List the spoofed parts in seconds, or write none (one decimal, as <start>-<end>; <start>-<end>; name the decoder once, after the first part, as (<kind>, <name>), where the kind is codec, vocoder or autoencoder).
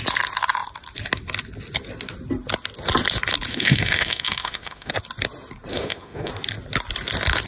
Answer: 3.5-4.9 (autoencoder, DAC-VAE); 5.7-6.3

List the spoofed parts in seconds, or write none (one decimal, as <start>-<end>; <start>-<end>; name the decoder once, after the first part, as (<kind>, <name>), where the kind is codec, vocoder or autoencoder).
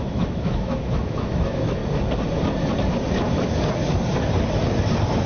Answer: 0.0-1.8 (autoencoder, DAC-VAE)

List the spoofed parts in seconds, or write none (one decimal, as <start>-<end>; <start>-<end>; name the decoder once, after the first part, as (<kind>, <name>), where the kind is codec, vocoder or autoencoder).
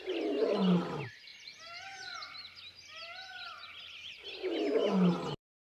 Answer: none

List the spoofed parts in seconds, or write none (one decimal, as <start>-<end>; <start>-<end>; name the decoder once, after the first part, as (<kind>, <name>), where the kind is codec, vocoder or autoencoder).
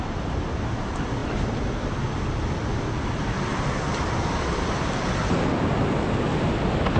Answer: none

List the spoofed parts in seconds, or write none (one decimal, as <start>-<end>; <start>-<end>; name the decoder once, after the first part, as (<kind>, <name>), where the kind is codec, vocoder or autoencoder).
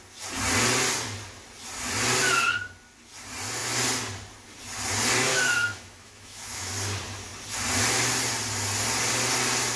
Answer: 5.3-6.7 (autoencoder, DAC-VAE)